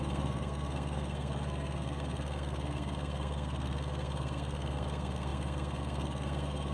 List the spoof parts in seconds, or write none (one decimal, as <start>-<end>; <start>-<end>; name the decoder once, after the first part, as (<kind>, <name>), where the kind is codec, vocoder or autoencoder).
0.0-6.7 (codec, SNAC)